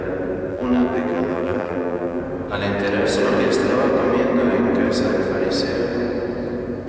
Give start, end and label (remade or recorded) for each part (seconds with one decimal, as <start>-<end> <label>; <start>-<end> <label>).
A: 0.0-0.5 recorded; 0.5-2.2 remade; 2.2-6.9 recorded